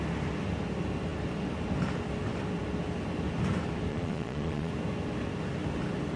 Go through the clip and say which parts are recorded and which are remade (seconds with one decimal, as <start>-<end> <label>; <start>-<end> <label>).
0.0-3.9 recorded; 3.9-4.7 remade; 4.7-6.2 recorded